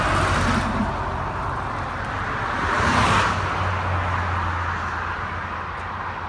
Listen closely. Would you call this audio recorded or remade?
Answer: recorded